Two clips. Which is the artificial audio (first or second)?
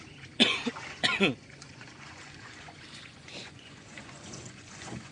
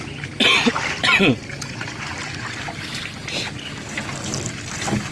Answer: first